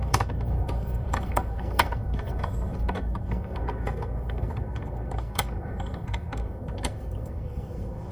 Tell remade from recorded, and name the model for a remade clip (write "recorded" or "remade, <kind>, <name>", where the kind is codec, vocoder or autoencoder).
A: remade, codec, SNAC